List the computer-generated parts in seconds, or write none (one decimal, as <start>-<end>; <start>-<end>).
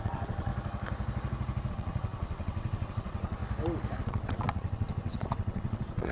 0.0-0.5; 1.7-3.4; 4.0-6.1